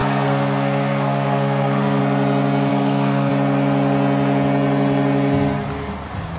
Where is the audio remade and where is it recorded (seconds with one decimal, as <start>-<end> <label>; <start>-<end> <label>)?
0.0-2.0 remade; 2.0-2.7 recorded; 2.7-3.3 remade; 3.3-6.4 recorded